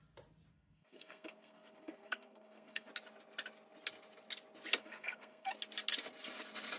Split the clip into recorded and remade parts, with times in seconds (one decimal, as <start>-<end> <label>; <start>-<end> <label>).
0.0-0.5 recorded; 0.5-2.9 remade; 2.9-4.8 recorded; 4.8-5.5 remade; 5.5-6.8 recorded